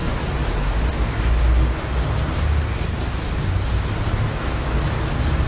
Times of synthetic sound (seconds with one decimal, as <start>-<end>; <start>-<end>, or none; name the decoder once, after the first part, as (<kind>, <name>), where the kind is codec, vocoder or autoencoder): none